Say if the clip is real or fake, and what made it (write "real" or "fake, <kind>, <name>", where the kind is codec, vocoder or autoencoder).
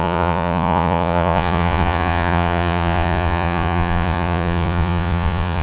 fake, vocoder, Vocos